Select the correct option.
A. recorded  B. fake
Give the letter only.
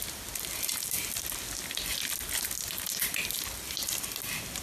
A